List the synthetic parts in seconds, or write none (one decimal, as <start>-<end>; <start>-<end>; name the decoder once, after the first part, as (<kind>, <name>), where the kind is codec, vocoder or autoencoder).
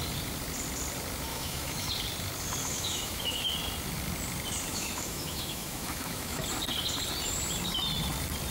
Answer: 1.3-1.9 (autoencoder, DAC-VAE); 2.6-3.5; 4.7-6.4